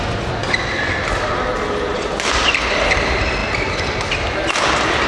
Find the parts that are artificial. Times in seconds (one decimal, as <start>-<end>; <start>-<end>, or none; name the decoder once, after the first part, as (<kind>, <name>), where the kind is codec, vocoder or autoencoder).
none